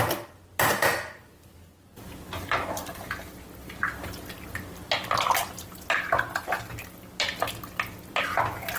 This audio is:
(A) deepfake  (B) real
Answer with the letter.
B